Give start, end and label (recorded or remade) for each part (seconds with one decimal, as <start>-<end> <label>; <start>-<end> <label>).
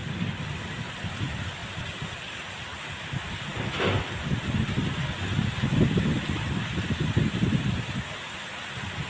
0.0-9.1 recorded